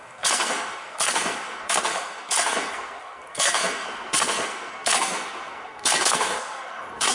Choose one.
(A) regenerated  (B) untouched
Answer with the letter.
A